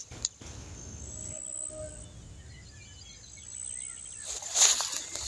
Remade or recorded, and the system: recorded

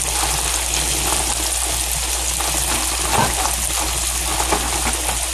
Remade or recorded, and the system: recorded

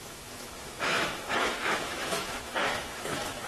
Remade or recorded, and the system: remade, autoencoder, DAC-VAE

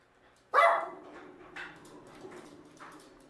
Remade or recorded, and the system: remade, vocoder, BigVGAN v2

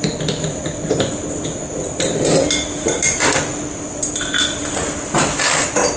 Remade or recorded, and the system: recorded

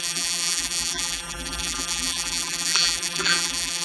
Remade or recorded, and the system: remade, vocoder, BigVGAN v2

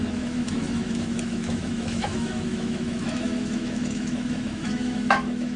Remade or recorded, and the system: remade, autoencoder, DAC-VAE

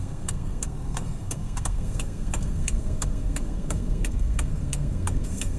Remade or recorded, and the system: remade, codec, SNAC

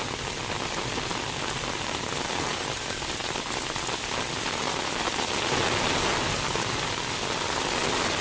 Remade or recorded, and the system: recorded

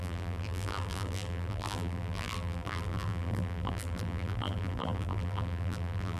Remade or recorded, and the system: remade, vocoder, BigVGAN v2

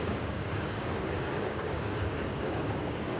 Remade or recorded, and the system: remade, codec, DAC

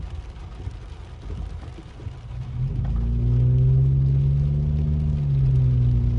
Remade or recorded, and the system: recorded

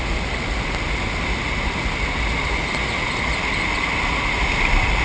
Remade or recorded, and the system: recorded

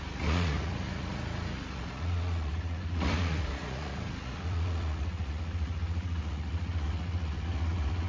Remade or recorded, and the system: remade, vocoder, Vocos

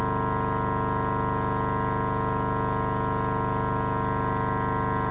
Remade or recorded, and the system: recorded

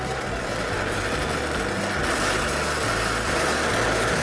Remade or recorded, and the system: recorded